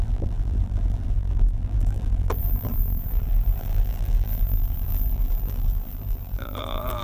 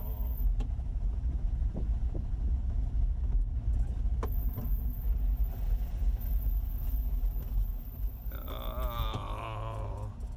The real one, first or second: second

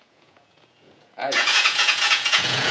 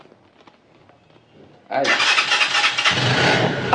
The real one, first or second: second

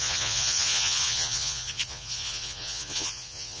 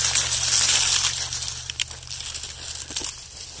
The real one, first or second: second